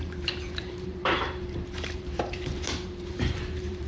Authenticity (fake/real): fake